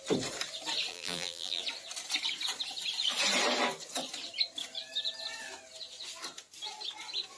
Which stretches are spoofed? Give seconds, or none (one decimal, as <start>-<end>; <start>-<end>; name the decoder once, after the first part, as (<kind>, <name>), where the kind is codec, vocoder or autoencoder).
0.9-1.6 (vocoder, BigVGAN v2)